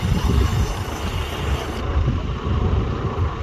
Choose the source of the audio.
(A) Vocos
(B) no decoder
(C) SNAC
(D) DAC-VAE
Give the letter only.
B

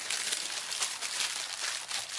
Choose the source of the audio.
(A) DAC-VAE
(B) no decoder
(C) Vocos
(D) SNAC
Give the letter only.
B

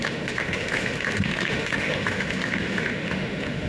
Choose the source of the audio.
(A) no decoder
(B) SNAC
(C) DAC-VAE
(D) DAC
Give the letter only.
C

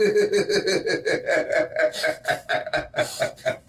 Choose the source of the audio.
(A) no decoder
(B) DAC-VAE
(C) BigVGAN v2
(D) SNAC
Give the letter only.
B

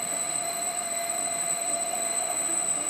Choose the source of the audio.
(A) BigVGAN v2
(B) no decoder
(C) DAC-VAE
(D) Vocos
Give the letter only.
C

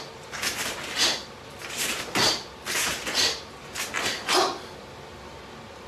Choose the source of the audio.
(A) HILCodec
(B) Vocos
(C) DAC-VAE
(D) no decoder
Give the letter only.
D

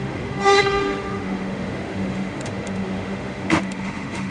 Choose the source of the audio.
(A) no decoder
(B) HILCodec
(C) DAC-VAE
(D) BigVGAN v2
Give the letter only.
C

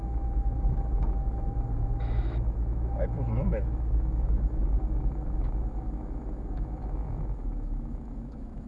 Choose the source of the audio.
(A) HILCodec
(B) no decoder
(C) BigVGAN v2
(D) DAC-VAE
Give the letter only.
D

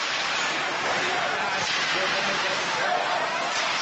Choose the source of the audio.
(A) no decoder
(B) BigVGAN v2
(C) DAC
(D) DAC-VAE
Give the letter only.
A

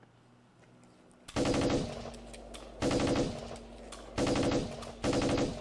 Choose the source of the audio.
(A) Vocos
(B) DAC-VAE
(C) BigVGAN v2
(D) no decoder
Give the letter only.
D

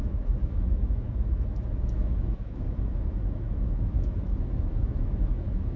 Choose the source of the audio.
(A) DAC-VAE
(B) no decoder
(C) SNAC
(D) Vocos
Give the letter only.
A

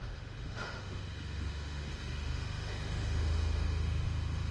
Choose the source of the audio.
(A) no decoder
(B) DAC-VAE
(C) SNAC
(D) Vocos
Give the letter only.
B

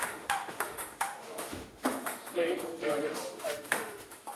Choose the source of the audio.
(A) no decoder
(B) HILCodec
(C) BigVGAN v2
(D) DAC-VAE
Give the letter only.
D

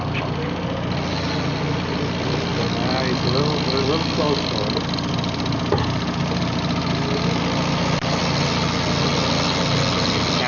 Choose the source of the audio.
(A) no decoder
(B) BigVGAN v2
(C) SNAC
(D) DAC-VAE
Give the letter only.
A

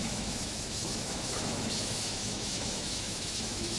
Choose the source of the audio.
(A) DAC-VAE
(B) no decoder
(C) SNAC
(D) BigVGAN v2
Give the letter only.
A